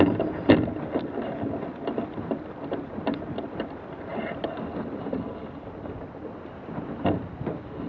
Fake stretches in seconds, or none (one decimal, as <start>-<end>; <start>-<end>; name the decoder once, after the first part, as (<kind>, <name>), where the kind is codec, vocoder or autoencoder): none